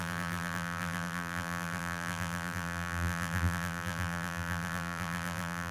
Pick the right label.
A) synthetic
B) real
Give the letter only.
A